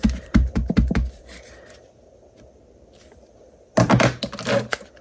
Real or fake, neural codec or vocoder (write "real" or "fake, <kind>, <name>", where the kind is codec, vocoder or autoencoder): real